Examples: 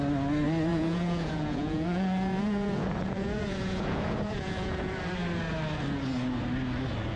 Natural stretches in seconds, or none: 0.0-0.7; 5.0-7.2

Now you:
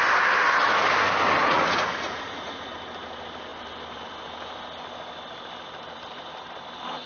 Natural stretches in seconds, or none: 0.0-1.4; 2.7-7.1